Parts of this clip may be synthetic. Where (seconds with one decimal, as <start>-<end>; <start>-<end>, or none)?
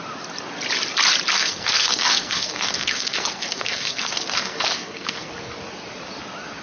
1.3-5.3